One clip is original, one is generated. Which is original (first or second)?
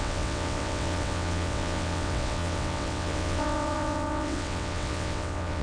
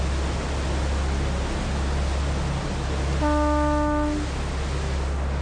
second